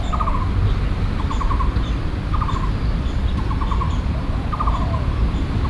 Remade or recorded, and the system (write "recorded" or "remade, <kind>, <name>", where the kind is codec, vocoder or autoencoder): remade, vocoder, BigVGAN v2